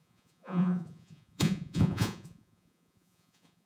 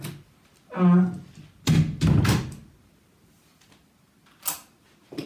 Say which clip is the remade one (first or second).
first